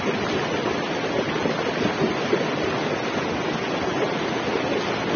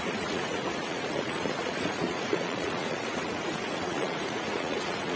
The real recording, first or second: first